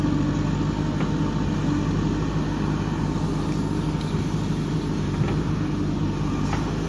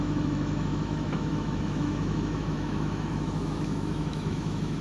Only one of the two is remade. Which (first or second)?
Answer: second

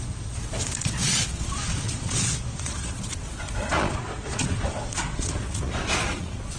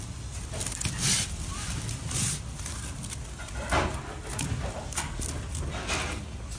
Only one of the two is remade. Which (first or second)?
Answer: first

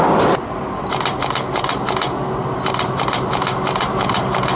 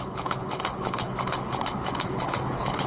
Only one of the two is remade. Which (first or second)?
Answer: second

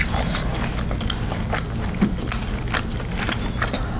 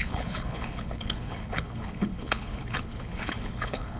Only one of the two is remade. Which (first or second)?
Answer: second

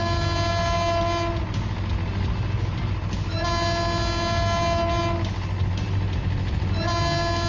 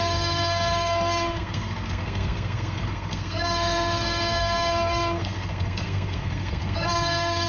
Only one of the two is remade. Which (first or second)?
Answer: second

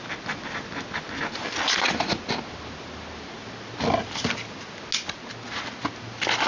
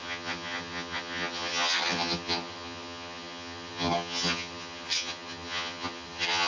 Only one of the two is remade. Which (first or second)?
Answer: second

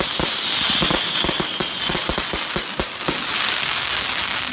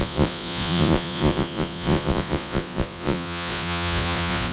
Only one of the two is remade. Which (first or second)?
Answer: second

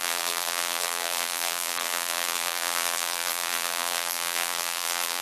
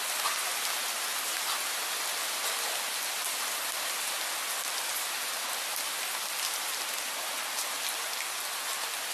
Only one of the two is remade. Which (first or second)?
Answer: first